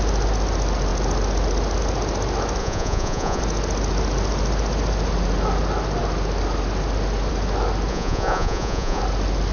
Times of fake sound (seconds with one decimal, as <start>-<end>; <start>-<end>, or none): 2.6-3.4; 7.9-9.0